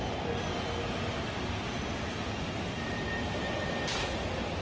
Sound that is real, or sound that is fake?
real